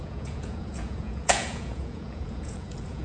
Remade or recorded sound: remade